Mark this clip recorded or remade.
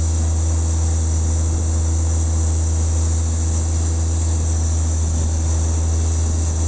recorded